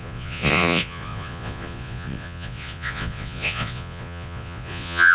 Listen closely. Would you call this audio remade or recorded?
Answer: remade